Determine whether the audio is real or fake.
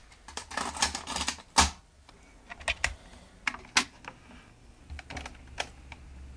real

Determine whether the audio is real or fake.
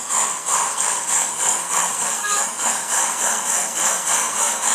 fake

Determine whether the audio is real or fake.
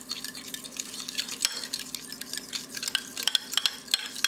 real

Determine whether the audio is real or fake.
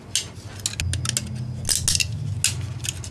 real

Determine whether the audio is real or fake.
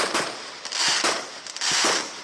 real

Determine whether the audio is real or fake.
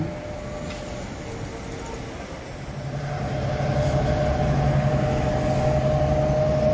real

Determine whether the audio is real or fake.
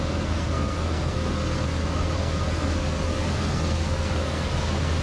fake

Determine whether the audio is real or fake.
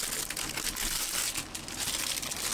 real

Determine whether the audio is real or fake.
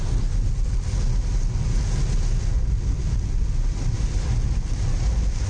real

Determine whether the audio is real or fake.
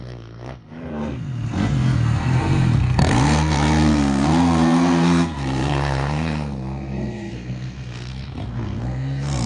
fake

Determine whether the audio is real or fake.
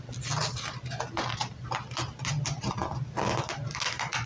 real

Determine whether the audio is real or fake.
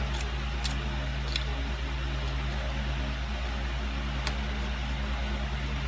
real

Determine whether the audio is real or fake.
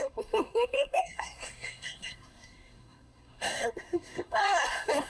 fake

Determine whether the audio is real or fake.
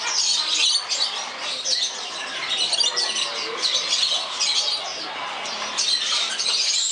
real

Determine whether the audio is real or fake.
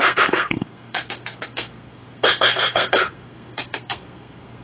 fake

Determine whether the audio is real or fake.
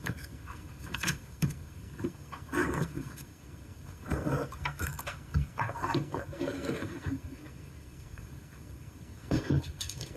fake